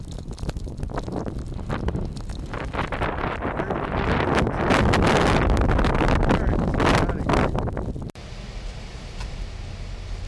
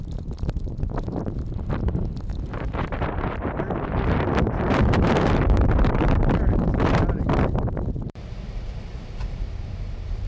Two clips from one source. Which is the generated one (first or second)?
second